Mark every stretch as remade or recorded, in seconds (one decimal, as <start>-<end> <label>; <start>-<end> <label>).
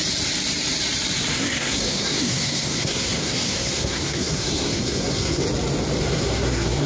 0.0-1.3 recorded; 1.3-5.4 remade; 5.4-6.0 recorded; 6.0-6.9 remade